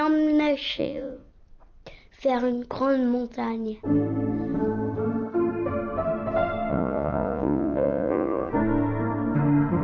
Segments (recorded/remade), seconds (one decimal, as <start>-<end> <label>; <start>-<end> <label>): 0.0-0.7 recorded; 0.7-1.3 remade; 1.3-6.7 recorded; 6.7-8.5 remade; 8.5-9.8 recorded